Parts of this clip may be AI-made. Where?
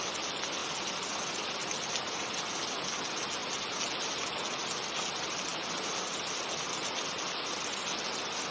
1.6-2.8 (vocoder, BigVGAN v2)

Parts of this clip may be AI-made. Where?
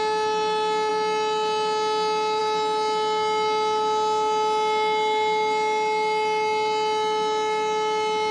none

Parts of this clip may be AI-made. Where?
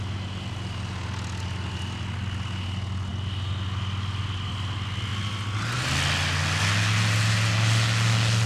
none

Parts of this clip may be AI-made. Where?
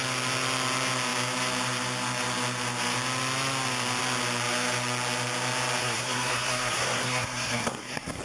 5.8-8.2 (codec, SNAC)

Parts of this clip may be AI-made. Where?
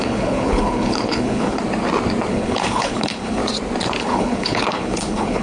0.0-1.6 (codec, HILCodec); 2.3-3.4; 4.0-5.4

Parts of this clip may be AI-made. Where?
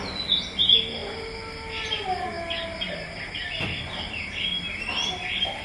none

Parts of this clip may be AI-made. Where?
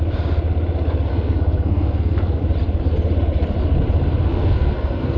1.1-2.4 (codec, SNAC); 4.3-5.2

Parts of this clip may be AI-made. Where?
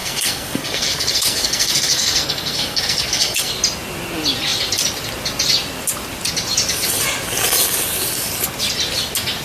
0.0-3.5 (codec, SNAC)